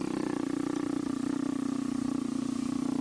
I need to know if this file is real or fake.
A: real